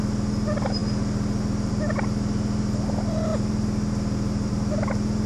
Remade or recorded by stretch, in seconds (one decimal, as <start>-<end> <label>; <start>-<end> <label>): 0.0-5.3 recorded